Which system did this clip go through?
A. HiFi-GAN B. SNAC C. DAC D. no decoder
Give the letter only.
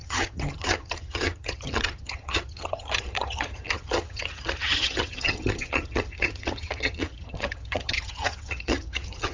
A